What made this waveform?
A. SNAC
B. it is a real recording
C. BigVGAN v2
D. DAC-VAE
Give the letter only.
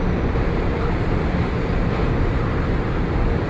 C